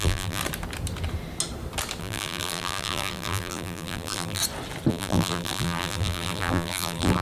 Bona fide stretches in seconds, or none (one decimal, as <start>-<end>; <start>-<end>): 0.4-2.0; 4.4-4.9